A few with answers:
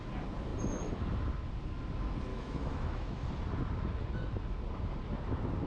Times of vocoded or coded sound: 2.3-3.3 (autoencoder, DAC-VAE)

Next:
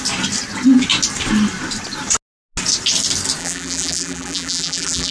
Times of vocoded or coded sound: 3.4-5.1 (vocoder, BigVGAN v2)

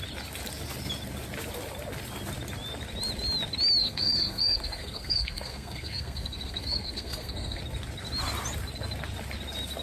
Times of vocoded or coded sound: 3.8-7.6 (codec, SNAC)